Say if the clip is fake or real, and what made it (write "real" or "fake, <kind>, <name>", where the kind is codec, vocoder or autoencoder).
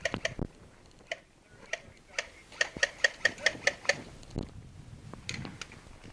real